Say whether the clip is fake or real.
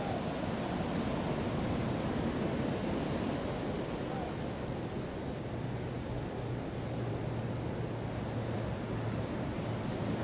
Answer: real